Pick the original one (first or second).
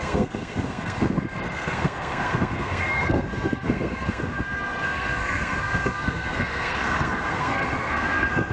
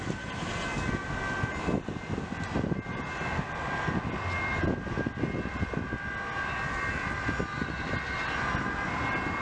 second